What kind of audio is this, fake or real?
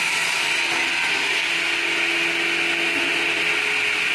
real